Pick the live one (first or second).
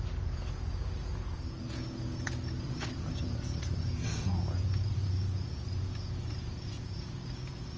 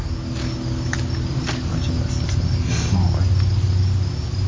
second